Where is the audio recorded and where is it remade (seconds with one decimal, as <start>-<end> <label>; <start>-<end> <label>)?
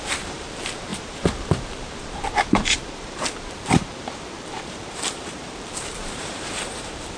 0.0-7.2 remade